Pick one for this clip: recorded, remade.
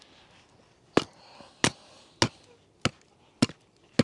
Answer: recorded